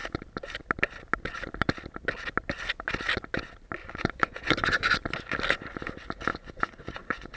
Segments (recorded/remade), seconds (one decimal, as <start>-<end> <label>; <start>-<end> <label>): 0.0-3.8 recorded; 3.8-4.9 remade; 4.9-6.3 recorded; 6.3-7.4 remade